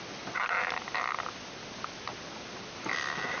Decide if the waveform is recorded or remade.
recorded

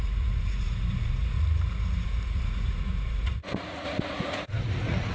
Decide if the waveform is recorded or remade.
remade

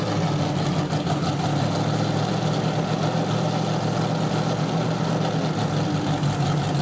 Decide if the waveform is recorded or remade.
recorded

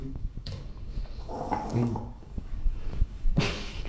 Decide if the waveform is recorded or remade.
remade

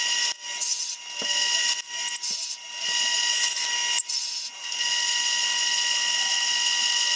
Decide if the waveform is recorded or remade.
recorded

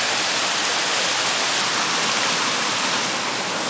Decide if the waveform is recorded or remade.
recorded